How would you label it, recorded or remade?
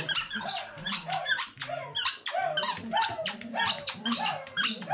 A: recorded